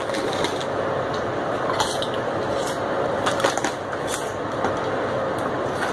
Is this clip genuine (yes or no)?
yes